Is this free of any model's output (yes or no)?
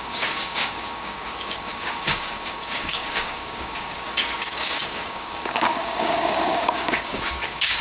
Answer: no